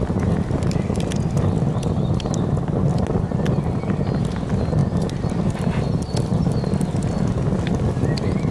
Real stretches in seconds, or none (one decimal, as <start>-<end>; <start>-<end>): 0.0-8.5

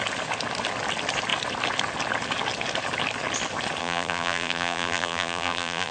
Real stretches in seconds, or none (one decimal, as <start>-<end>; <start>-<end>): 0.0-3.8

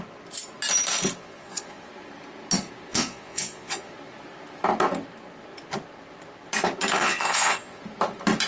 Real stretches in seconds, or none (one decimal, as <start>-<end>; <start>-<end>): 0.0-1.2; 1.9-2.9; 3.9-7.0; 7.8-8.5

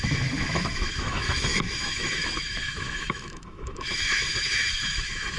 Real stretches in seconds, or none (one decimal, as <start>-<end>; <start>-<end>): none

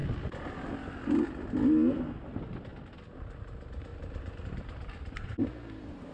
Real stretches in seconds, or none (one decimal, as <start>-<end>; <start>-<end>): 0.0-3.9

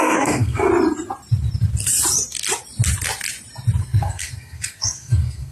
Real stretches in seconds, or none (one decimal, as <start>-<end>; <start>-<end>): 0.7-3.8